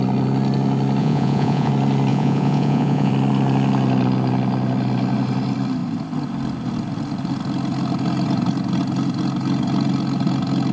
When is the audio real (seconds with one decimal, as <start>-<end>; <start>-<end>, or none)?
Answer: 0.0-1.0; 1.7-2.1; 3.1-10.7